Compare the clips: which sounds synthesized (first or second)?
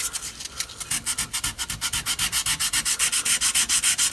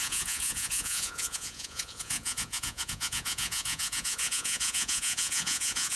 second